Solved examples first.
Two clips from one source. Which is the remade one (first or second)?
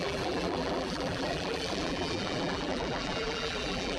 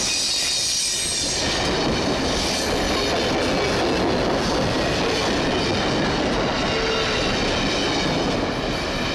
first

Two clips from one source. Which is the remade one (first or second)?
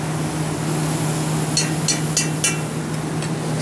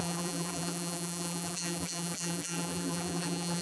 second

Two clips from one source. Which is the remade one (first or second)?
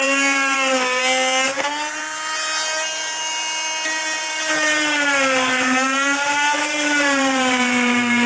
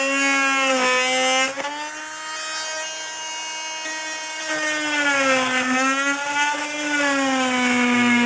first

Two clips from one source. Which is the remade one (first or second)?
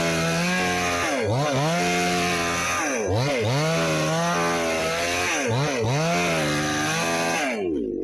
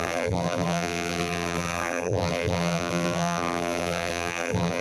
second